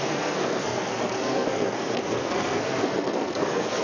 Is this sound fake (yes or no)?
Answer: yes